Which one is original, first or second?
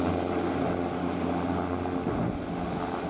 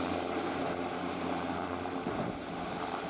first